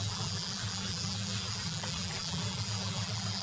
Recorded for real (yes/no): no